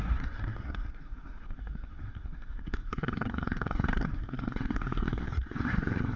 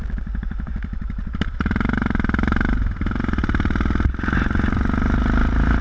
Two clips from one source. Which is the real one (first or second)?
second